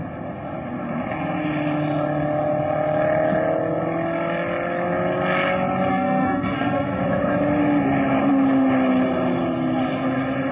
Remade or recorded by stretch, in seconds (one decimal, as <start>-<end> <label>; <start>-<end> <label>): 0.0-5.9 recorded; 5.9-7.0 remade; 7.0-10.5 recorded